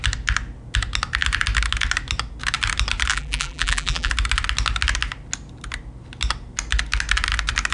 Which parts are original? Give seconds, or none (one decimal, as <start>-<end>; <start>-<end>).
0.0-3.1; 4.1-7.7